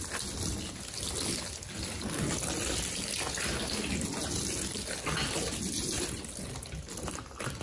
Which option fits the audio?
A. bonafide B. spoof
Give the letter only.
A